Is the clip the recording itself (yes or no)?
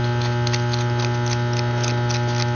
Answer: yes